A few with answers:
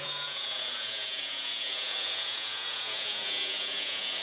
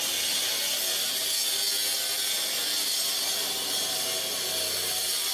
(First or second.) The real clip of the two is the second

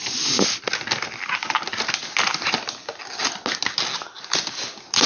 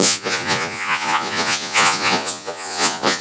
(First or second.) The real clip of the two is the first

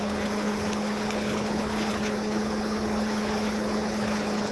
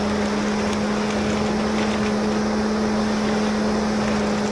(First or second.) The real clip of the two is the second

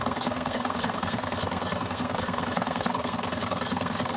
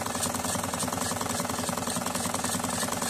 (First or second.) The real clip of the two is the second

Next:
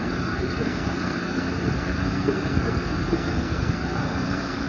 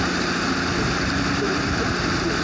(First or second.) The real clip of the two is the second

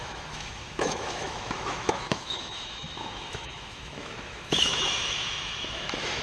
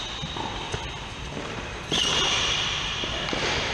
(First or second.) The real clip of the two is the second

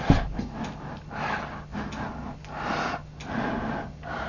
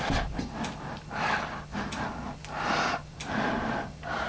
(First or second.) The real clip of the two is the first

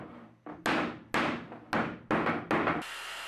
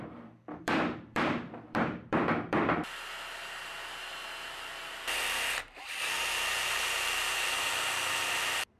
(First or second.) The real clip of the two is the first